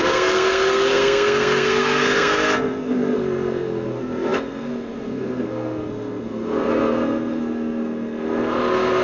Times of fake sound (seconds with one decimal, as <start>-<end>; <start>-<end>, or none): 0.0-9.0